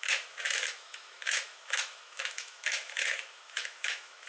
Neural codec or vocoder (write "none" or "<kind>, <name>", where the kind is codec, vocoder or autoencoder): autoencoder, DAC-VAE